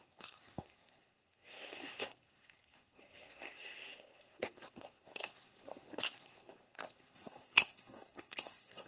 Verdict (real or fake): fake